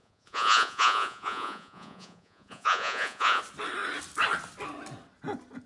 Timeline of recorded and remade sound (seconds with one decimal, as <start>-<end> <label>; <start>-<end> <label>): 0.0-3.4 remade; 3.4-5.7 recorded